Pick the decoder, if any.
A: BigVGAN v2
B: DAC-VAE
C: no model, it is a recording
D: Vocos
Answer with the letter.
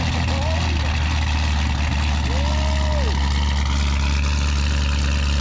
C